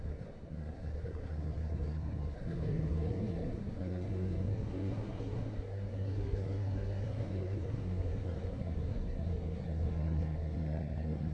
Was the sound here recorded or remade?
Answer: remade